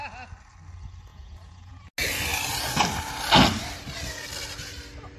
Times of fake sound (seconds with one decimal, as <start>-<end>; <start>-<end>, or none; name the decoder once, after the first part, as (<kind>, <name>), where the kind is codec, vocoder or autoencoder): 1.1-1.9 (vocoder, Vocos)